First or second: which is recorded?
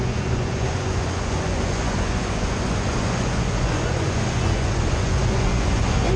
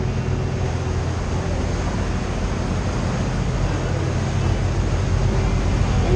second